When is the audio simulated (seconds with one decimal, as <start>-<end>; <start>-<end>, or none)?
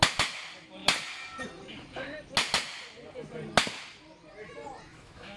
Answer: 4.9-5.4